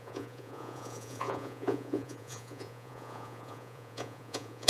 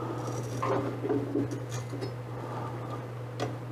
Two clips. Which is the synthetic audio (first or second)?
first